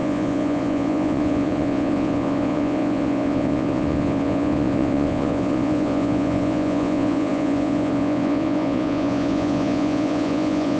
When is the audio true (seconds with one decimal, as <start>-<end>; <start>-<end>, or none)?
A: none